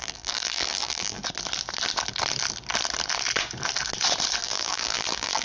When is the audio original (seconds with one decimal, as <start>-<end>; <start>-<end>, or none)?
1.2-4.4